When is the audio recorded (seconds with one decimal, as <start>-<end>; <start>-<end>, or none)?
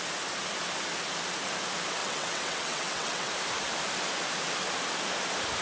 0.0-2.0; 3.3-5.6